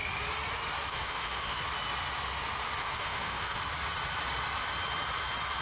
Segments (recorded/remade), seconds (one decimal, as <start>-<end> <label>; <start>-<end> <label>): 0.0-0.9 recorded; 0.9-1.6 remade; 1.6-2.8 recorded; 2.8-3.6 remade; 3.6-5.6 recorded